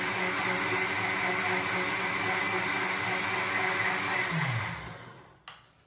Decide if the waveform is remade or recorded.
recorded